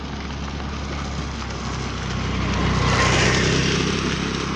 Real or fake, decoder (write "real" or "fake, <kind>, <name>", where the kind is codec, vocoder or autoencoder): real